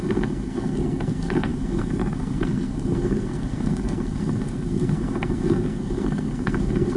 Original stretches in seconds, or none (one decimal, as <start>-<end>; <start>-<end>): none